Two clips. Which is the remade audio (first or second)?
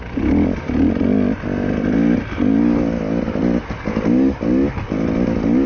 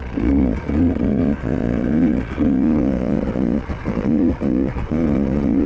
second